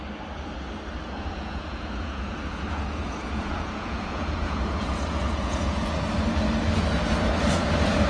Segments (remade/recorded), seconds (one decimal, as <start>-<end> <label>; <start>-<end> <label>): 0.0-1.0 recorded; 1.0-5.9 remade; 5.9-8.1 recorded